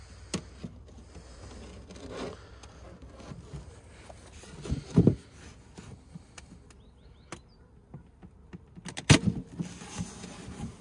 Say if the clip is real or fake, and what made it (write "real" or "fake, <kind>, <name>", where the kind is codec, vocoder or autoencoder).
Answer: real